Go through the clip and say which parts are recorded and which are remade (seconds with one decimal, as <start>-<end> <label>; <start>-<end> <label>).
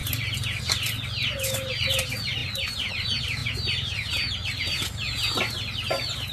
0.0-6.3 recorded